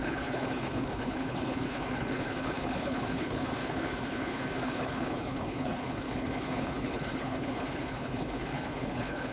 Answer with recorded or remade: remade